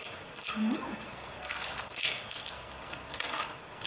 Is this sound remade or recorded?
remade